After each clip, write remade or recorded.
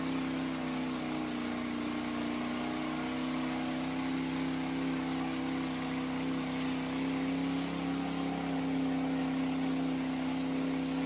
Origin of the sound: recorded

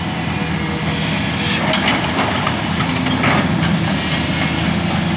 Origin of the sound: recorded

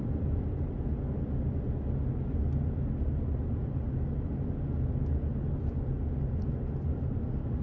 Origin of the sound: recorded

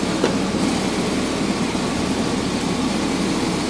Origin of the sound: recorded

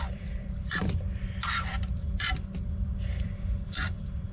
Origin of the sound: remade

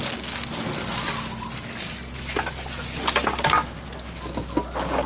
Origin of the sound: recorded